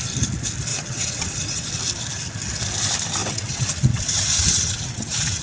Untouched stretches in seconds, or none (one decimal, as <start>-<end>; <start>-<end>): 0.0-0.7; 1.7-3.2